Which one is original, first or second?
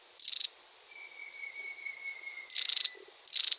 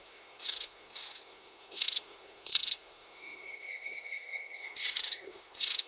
first